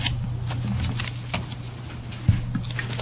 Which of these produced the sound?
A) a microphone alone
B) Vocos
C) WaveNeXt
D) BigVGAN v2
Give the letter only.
A